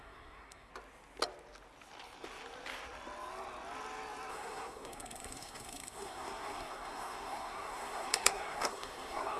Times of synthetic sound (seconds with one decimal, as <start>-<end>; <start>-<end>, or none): 0.0-0.7; 4.3-9.4